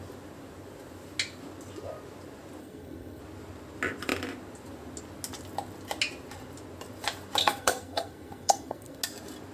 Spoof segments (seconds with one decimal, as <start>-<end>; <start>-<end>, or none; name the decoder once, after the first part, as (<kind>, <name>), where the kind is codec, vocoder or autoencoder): 2.6-3.2 (codec, SNAC); 7.4-9.0